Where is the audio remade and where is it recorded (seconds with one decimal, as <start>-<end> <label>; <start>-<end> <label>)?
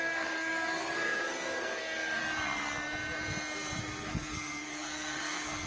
0.0-2.2 remade; 2.2-3.8 recorded; 3.8-5.7 remade